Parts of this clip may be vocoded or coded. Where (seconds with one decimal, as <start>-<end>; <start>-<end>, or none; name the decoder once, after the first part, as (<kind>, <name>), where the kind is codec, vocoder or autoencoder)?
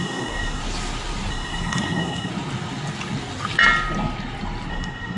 0.0-0.6 (codec, SNAC); 1.3-2.3; 4.7-5.2